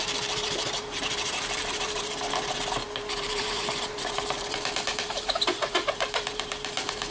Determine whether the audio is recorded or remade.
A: remade